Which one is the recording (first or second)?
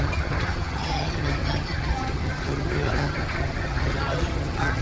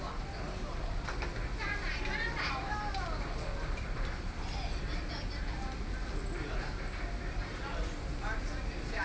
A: second